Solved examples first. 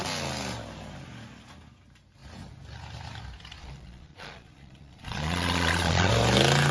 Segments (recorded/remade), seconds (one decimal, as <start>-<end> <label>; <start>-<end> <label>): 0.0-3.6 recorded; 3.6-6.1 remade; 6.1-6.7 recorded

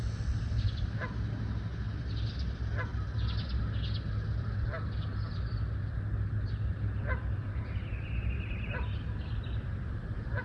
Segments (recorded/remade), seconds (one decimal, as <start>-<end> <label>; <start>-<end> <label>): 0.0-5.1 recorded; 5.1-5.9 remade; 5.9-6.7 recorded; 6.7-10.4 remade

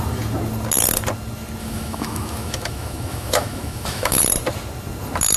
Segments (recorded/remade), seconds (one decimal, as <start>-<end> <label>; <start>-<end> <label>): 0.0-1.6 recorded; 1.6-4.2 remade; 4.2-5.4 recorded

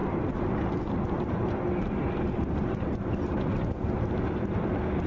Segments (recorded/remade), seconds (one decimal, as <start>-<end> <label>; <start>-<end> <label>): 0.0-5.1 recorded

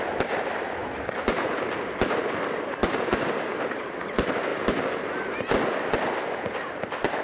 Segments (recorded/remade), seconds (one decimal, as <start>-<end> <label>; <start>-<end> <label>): 0.0-2.8 recorded; 2.8-3.5 remade; 3.5-7.2 recorded